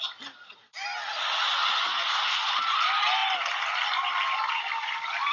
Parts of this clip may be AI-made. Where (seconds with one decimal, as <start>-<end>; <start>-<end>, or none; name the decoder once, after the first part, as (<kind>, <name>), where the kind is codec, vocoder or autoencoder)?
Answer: none